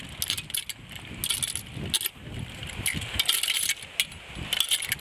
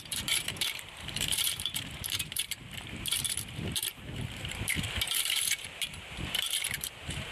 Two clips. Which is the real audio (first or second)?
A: first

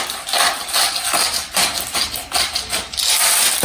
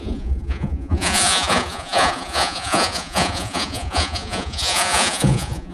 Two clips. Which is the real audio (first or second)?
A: first